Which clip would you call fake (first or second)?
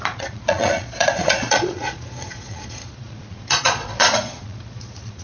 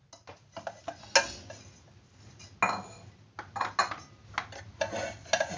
first